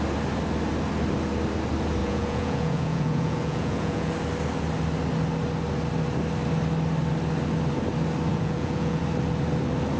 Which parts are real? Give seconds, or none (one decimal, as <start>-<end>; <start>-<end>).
0.0-2.0; 4.1-8.3; 9.0-10.0